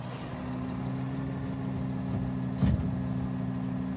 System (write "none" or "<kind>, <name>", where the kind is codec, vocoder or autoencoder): none